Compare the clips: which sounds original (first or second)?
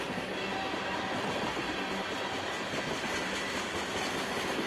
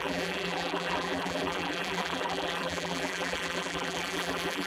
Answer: first